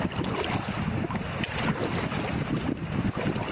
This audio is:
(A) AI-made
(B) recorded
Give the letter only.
B